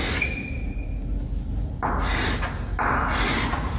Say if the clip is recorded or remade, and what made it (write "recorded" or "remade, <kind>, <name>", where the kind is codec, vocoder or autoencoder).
recorded